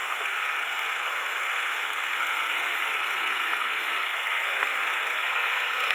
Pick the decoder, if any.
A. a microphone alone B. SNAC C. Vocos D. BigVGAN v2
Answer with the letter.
B